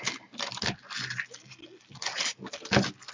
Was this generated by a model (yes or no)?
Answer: no